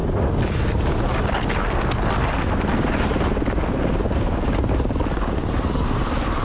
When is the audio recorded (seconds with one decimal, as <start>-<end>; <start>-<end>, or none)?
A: 0.0-6.4